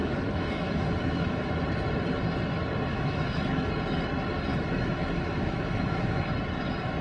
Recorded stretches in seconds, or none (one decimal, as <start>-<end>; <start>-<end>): 1.5-2.9; 3.7-4.5; 6.2-7.0